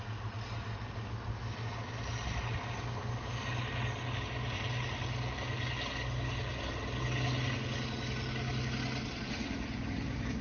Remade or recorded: recorded